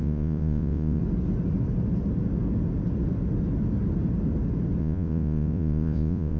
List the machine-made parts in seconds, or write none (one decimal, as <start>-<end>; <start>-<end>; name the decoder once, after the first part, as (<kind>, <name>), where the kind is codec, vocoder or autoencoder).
0.0-1.0 (vocoder, Vocos); 4.8-6.4